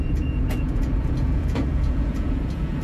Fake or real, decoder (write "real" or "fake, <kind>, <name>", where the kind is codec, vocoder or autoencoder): fake, vocoder, Vocos